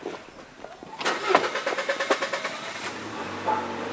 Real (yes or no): yes